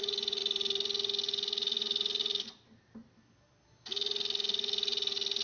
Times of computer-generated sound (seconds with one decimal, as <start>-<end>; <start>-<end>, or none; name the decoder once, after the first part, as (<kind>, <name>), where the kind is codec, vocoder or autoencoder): none